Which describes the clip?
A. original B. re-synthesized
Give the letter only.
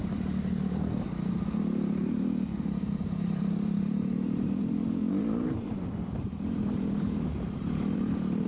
B